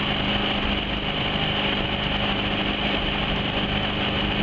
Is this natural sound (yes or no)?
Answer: yes